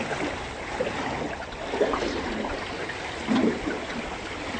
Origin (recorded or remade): recorded